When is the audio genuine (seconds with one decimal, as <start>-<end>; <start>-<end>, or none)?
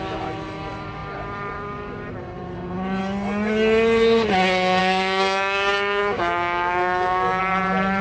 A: 0.0-4.8; 7.4-8.0